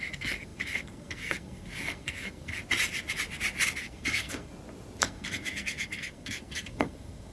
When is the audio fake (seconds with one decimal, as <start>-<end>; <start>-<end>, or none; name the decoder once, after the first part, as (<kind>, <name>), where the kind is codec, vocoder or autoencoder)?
0.0-2.6 (codec, SNAC); 3.8-4.5; 5.0-7.3